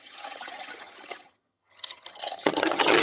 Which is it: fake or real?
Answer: fake